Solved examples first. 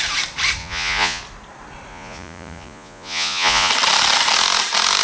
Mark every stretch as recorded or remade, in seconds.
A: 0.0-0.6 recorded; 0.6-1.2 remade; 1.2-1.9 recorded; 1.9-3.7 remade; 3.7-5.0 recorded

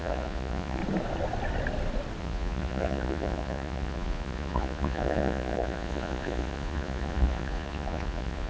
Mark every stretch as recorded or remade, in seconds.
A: 0.0-0.8 remade; 0.8-2.2 recorded; 2.2-8.5 remade

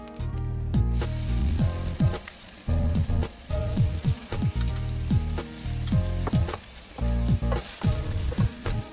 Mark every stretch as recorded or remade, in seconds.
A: 0.0-1.4 recorded; 1.4-4.4 remade; 4.4-6.4 recorded; 6.4-6.9 remade; 6.9-7.6 recorded; 7.6-8.9 remade

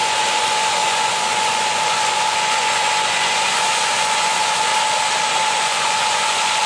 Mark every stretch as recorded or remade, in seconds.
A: 0.0-4.7 remade; 4.7-5.3 recorded; 5.3-6.7 remade

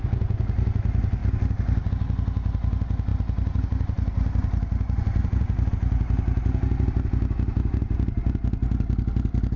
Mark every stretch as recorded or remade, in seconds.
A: 0.0-9.6 recorded

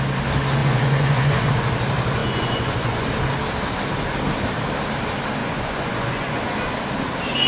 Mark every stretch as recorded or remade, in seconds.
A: 0.0-0.6 recorded; 0.6-1.5 remade; 1.5-2.2 recorded; 2.2-3.1 remade; 3.1-5.4 recorded; 5.4-6.4 remade; 6.4-7.5 recorded

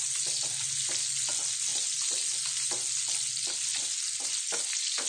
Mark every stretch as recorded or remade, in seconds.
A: 0.0-5.1 recorded